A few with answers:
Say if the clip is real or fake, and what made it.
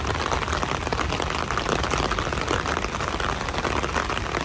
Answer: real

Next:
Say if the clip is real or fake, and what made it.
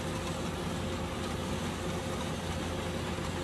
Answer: real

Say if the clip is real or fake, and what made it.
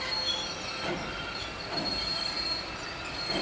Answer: real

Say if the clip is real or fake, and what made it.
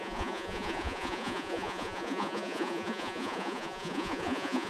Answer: fake, vocoder, Vocos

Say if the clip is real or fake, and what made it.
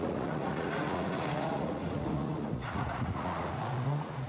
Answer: fake, vocoder, Vocos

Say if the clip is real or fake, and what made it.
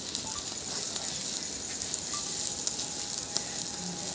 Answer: real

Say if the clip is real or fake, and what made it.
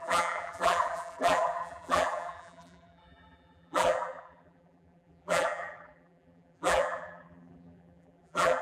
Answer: fake, vocoder, BigVGAN v2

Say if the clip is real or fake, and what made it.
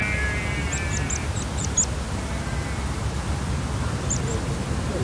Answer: real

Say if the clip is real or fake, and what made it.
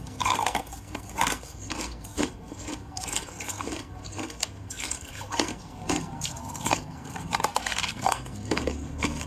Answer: fake, codec, SNAC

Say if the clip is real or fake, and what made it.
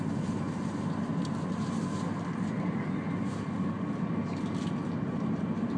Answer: real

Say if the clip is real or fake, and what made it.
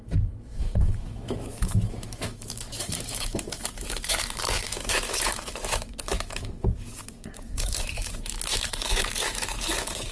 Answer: fake, autoencoder, DAC-VAE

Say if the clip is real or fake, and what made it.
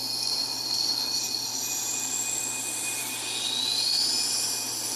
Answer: real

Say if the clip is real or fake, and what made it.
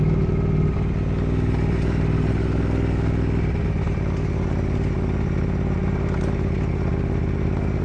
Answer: real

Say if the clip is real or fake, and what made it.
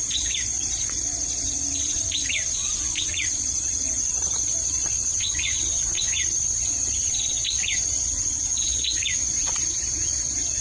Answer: fake, vocoder, Vocos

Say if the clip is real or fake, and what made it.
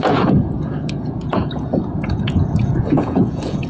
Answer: fake, vocoder, Vocos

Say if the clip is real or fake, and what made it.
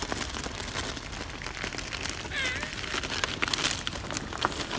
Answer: real